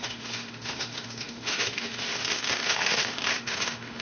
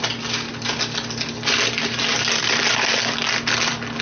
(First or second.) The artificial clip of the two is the first